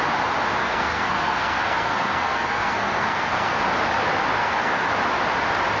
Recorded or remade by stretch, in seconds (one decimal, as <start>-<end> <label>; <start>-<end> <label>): 0.0-0.6 recorded; 0.6-3.6 remade; 3.6-4.4 recorded; 4.4-4.9 remade; 4.9-5.8 recorded